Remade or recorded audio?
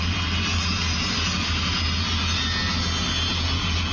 recorded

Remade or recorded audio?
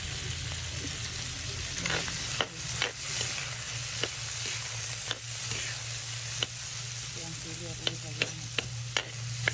recorded